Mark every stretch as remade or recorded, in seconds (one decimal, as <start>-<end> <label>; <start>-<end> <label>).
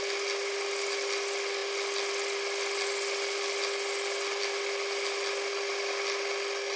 0.0-6.8 recorded